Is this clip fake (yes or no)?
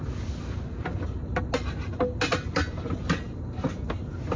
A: no